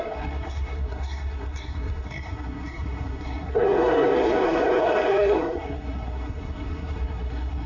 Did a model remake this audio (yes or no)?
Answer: yes